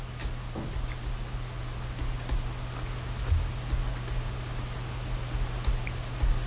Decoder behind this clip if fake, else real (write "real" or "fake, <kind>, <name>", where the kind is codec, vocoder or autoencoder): real